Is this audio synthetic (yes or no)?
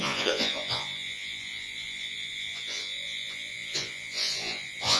yes